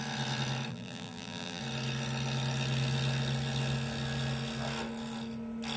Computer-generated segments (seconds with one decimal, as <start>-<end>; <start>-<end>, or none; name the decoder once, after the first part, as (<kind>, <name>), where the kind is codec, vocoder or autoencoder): 0.7-1.6 (vocoder, BigVGAN v2)